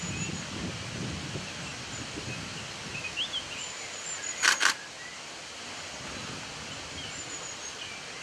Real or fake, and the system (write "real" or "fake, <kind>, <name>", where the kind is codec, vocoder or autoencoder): real